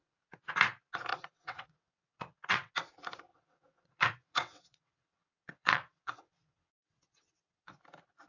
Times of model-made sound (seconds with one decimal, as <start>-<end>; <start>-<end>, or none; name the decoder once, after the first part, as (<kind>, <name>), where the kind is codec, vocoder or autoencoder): 1.1-2.7 (vocoder, WaveNeXt); 3.3-7.8